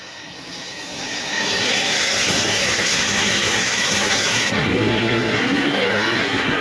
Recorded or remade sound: remade